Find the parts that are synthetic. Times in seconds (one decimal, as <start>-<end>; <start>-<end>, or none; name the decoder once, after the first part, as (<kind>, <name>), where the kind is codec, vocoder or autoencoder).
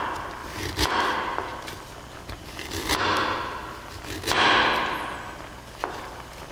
0.4-1.0 (vocoder, BigVGAN v2); 1.5-3.6